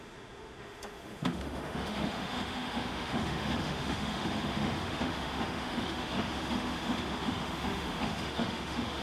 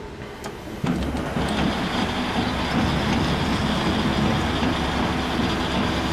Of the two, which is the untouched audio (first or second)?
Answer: second